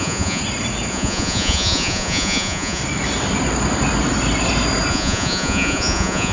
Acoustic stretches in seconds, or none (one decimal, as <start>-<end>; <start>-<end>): 0.4-0.9; 2.8-4.9